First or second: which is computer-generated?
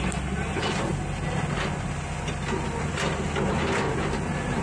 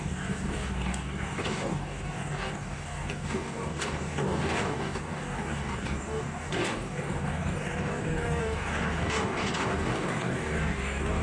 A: second